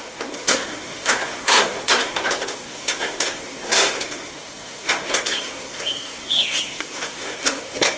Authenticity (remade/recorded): remade